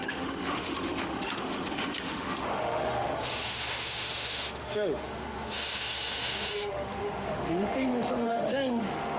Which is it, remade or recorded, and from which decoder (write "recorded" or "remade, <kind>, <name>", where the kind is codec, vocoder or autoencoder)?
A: remade, autoencoder, DAC-VAE